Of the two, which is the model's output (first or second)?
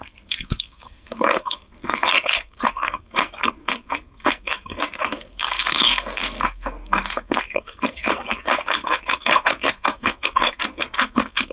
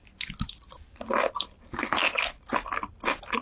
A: first